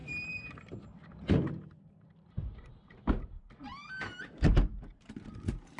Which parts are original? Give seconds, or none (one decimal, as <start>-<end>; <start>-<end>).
0.0-2.0; 3.8-4.7